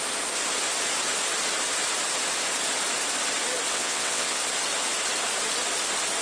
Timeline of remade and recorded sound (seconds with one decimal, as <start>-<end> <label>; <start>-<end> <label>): 0.0-3.7 recorded; 3.7-4.4 remade; 4.4-6.2 recorded